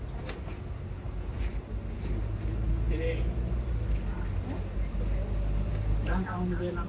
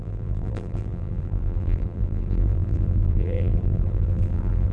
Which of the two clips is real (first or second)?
first